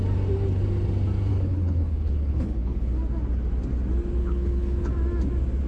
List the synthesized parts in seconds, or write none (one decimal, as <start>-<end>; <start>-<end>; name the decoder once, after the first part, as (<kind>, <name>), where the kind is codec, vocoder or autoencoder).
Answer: 1.3-3.0 (codec, HILCodec); 4.2-4.9